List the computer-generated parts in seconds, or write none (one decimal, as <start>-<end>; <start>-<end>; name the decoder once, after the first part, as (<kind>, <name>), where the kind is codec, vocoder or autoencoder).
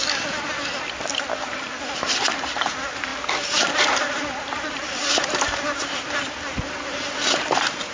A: 1.1-3.1 (vocoder, BigVGAN v2); 3.7-7.9